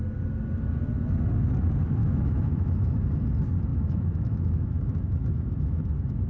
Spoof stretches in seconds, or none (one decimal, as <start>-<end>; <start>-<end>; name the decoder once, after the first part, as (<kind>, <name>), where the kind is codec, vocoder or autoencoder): 2.0-3.2 (autoencoder, DAC-VAE); 3.7-5.8